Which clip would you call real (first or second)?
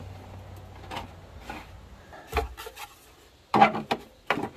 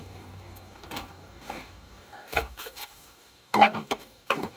first